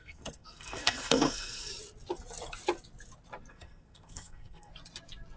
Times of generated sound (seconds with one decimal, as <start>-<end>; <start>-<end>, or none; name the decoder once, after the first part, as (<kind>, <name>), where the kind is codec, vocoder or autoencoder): 0.0-1.7 (codec, SNAC); 3.5-4.7